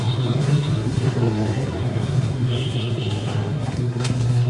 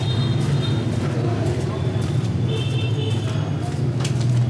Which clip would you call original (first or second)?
second